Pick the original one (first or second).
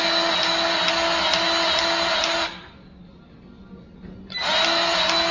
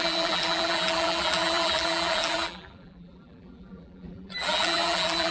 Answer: first